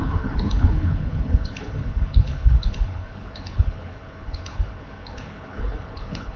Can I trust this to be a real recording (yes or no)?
no